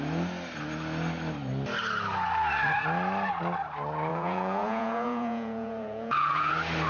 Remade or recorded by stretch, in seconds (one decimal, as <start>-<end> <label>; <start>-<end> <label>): 0.0-4.1 recorded; 4.1-6.5 remade; 6.5-6.9 recorded